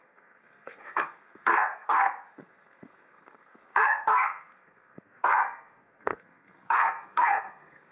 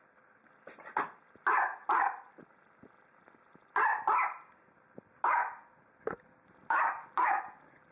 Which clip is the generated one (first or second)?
first